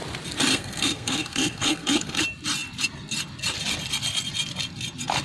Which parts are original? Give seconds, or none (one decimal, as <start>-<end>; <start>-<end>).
0.0-0.5; 2.2-5.2